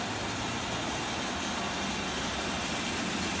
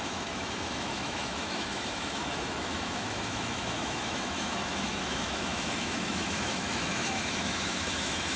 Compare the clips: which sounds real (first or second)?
first